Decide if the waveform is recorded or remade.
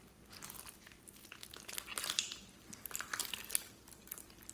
recorded